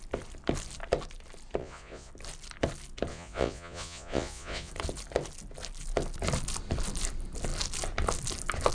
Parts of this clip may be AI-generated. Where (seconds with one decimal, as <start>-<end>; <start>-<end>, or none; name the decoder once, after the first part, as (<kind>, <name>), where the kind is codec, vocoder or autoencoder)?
1.6-2.1 (vocoder, Vocos); 3.1-4.7